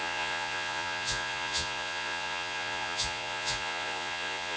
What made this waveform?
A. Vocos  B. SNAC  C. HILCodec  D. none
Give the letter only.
A